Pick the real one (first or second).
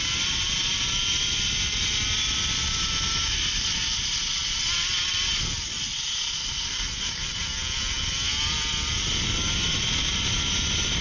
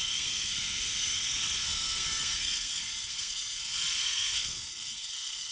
first